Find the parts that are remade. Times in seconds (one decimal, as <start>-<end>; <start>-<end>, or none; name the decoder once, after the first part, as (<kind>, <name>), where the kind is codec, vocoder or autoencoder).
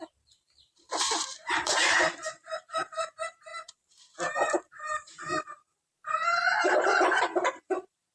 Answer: 0.0-8.1 (vocoder, BigVGAN v2)